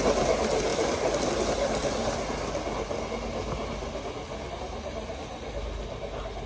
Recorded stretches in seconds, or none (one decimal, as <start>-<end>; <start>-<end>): 0.0-6.5